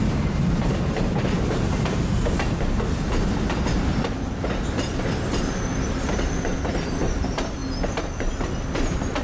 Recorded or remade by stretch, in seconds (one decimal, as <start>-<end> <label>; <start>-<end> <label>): 0.0-7.6 remade; 7.6-9.2 recorded